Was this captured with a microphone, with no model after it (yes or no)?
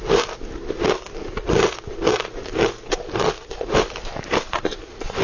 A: yes